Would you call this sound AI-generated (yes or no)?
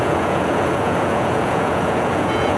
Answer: yes